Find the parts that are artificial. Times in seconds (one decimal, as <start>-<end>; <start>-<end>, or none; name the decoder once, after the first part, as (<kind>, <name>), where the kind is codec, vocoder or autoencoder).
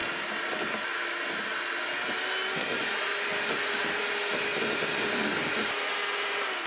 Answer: none